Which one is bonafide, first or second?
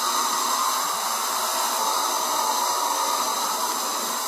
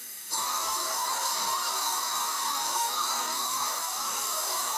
first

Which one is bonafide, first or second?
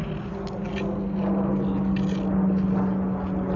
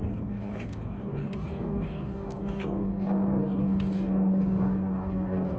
first